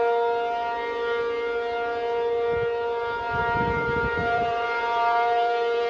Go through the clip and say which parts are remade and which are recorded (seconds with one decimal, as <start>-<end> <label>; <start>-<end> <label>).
0.0-3.4 recorded; 3.4-5.9 remade